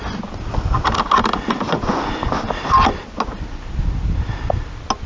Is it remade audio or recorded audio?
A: recorded